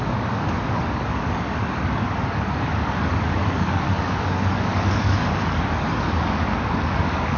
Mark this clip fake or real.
fake